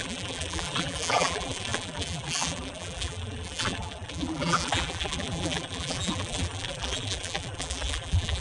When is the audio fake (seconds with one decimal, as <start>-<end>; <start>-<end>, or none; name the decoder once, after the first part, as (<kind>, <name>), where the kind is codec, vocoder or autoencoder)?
0.0-8.4 (vocoder, BigVGAN v2)